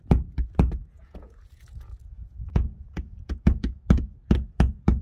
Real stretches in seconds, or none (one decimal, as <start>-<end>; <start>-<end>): 0.0-0.8; 3.8-5.0